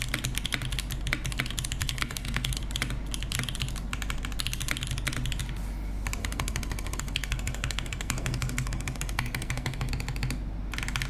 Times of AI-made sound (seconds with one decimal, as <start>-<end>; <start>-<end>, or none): 1.8-2.6; 6.2-9.9